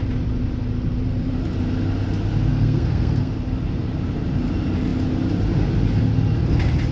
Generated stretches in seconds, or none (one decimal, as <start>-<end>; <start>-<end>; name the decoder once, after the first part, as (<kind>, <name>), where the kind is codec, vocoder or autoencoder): 2.5-3.3 (codec, SNAC)